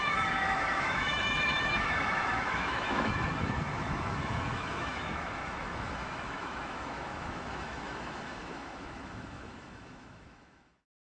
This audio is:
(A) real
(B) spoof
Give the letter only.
B